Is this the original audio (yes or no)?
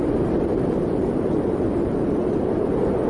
no